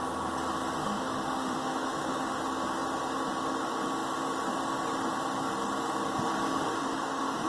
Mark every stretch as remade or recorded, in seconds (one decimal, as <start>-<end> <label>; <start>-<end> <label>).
0.0-0.8 recorded; 0.8-2.4 remade; 2.4-6.5 recorded; 6.5-7.5 remade